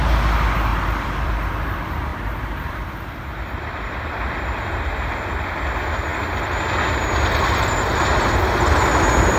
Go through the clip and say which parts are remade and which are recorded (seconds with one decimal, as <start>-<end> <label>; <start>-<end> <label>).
0.0-0.7 recorded; 0.7-1.4 remade; 1.4-2.1 recorded; 2.1-3.3 remade; 3.3-9.4 recorded